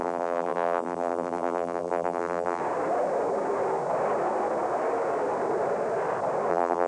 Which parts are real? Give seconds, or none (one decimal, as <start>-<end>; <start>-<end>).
2.6-6.5